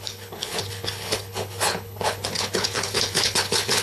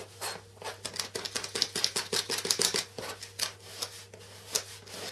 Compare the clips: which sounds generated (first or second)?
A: first